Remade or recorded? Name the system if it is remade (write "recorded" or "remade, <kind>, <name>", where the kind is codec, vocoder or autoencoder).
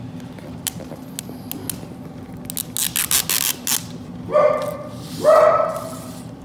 recorded